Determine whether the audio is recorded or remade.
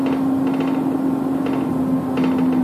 recorded